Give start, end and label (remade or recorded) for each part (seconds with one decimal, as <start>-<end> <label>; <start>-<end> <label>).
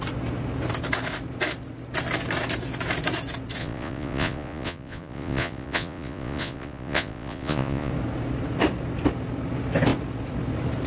0.0-3.6 recorded; 3.6-7.9 remade; 7.9-10.9 recorded